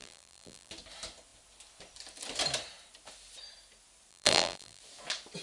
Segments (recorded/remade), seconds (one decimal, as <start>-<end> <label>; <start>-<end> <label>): 0.0-0.7 remade; 0.7-4.1 recorded; 4.1-4.8 remade; 4.8-5.4 recorded